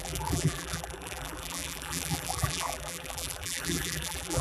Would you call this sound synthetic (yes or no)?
yes